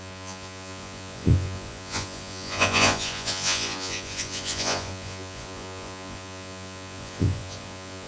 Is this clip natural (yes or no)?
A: no